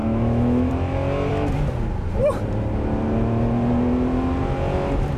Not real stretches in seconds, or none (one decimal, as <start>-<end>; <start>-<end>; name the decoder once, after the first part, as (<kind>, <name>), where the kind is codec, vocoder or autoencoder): 0.0-0.7 (autoencoder, DAC-VAE)